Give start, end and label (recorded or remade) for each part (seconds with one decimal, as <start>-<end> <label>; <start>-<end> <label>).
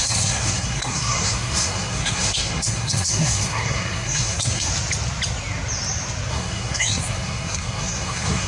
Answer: 0.0-4.7 remade; 4.7-6.3 recorded; 6.3-8.5 remade